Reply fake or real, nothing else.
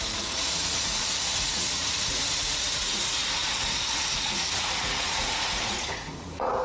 fake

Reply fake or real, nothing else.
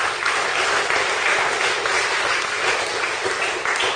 real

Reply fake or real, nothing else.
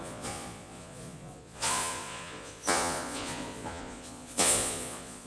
fake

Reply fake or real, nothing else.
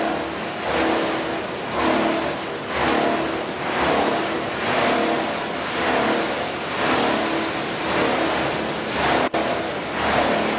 real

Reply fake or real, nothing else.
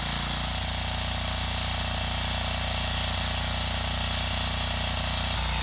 real